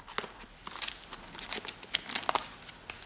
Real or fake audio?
real